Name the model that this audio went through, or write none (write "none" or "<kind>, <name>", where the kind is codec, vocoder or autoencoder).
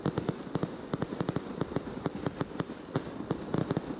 none